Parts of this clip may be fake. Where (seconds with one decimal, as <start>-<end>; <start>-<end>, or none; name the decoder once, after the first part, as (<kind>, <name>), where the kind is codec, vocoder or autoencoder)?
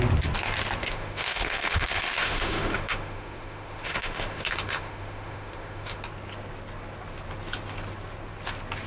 0.8-6.0 (autoencoder, DAC-VAE)